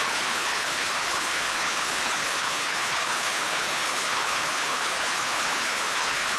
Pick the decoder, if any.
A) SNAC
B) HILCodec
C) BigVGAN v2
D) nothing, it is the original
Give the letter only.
B